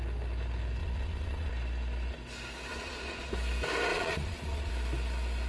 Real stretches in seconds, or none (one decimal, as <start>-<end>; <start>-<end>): 0.0-0.8; 1.5-2.7; 3.3-3.9; 4.7-5.5